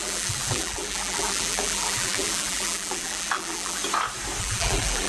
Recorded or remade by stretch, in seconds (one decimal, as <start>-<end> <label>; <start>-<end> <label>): 0.0-3.8 remade; 3.8-4.4 recorded; 4.4-5.1 remade